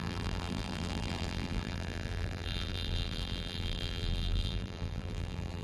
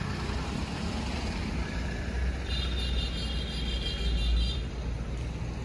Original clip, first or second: second